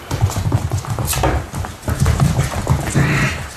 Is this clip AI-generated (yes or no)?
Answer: yes